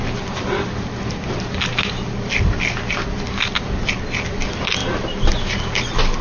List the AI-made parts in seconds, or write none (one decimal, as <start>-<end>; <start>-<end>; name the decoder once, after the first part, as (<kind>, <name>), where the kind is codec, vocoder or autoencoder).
none